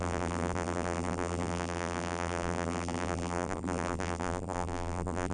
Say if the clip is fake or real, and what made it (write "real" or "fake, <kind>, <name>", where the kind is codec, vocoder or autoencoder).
fake, vocoder, BigVGAN v2